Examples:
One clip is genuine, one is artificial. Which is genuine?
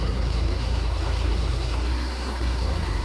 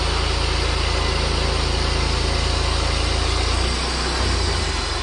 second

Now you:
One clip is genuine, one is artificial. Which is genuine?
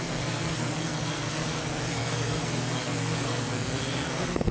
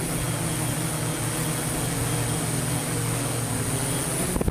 second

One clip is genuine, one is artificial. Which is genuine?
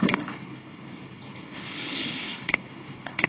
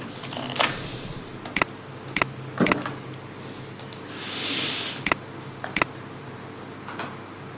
second